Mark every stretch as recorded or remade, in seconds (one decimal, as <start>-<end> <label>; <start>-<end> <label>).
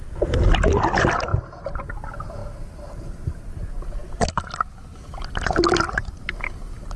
0.0-7.0 recorded